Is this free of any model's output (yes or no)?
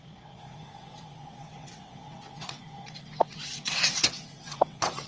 no